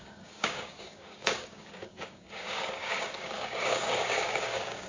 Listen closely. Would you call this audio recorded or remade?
remade